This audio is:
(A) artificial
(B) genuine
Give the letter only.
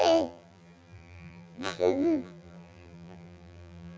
A